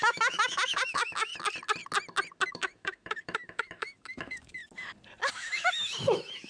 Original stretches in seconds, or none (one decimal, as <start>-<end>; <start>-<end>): 1.3-2.5; 4.6-5.3